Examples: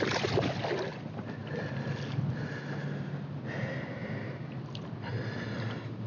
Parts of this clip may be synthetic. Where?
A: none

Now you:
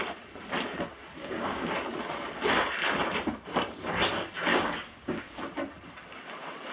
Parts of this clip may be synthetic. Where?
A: 1.2-1.7 (codec, DAC); 4.5-5.4

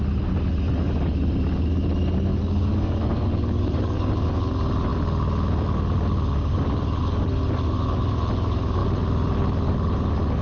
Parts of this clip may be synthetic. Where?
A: 2.3-4.1 (codec, DAC)

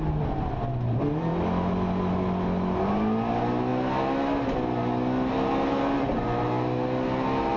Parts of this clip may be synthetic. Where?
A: none

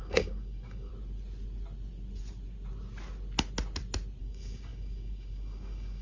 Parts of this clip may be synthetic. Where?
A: 0.0-0.9 (codec, DAC); 4.2-6.0